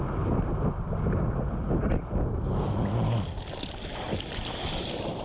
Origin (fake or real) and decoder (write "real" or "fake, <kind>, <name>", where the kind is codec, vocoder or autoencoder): real